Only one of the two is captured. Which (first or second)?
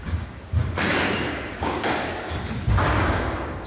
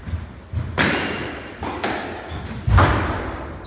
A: second